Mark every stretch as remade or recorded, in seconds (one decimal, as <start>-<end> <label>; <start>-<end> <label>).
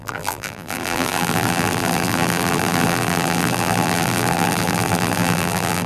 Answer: 0.0-5.9 remade